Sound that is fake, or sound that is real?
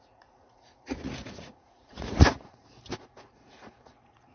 fake